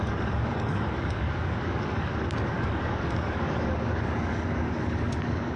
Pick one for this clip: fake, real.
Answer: fake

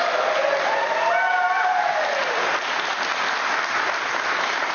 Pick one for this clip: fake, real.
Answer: real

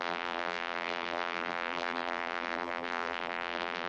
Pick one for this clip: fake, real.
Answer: fake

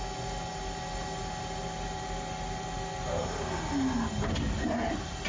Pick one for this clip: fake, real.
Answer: real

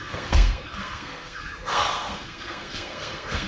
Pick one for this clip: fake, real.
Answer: fake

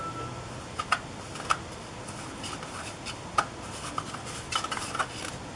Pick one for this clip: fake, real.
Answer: real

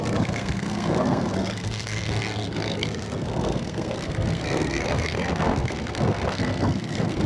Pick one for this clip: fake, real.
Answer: fake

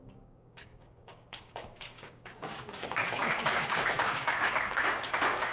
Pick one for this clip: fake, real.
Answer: fake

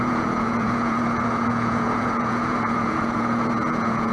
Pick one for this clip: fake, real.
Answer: fake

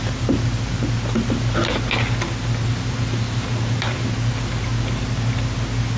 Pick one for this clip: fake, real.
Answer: real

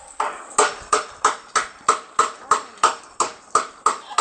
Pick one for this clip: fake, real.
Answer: real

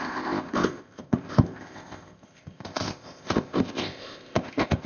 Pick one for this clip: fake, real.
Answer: fake